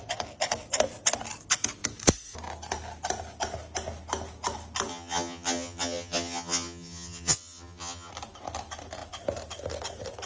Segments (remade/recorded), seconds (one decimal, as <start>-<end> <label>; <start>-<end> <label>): 0.0-4.9 recorded; 4.9-8.1 remade; 8.1-10.3 recorded